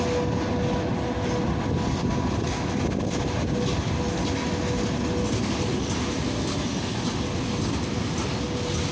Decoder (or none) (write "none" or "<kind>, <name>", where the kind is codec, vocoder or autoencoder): none